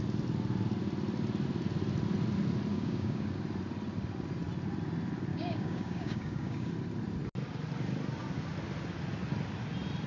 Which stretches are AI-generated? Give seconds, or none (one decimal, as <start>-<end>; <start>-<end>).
2.7-3.4; 5.3-6.7